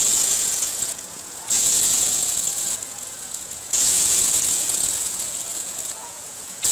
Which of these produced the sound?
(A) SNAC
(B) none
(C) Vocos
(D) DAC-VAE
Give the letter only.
C